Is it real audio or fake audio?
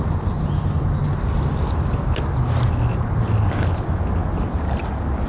real